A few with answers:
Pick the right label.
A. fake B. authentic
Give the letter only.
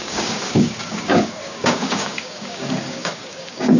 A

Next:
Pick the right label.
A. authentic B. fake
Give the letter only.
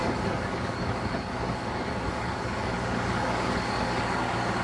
B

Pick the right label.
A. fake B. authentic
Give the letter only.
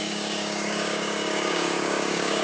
A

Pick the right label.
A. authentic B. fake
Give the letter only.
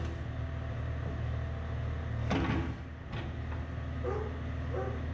A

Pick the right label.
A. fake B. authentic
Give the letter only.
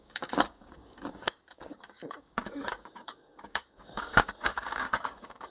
A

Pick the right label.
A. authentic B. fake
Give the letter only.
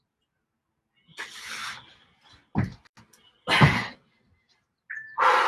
A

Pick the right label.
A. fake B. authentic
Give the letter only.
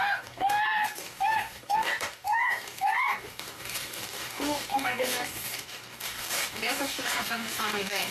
A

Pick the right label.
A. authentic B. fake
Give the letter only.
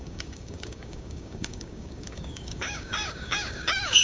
B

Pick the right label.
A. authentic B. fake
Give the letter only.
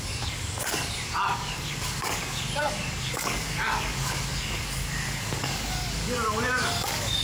B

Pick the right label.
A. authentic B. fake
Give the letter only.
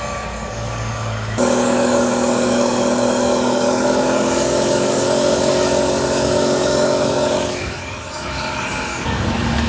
B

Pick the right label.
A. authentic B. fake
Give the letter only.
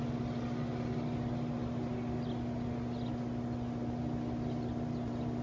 A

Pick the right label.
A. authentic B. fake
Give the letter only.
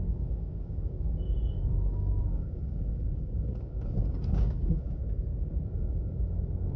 B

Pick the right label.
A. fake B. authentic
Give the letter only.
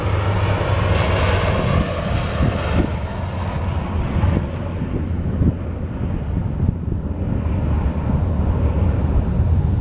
B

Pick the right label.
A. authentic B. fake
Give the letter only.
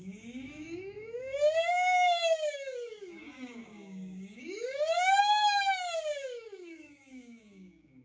B